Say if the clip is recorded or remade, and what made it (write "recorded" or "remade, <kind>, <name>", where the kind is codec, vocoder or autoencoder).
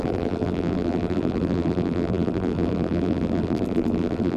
remade, vocoder, BigVGAN v2